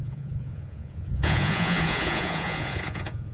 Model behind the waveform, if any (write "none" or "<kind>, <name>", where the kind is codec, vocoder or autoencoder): vocoder, Vocos